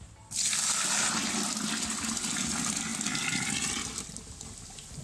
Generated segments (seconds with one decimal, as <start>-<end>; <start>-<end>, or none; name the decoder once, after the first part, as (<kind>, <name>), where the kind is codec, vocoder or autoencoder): none